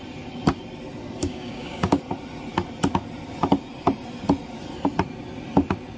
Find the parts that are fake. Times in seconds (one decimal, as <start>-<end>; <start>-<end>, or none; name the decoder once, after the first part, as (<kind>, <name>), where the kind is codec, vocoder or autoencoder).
1.2-2.0 (codec, DAC)